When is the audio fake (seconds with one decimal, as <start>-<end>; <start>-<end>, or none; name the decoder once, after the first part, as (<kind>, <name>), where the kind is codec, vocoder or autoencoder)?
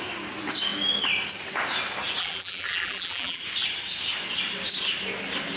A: 2.2-3.4 (vocoder, BigVGAN v2)